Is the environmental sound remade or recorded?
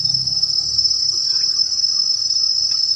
remade